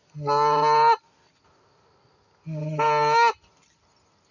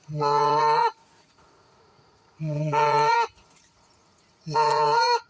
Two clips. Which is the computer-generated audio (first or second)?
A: second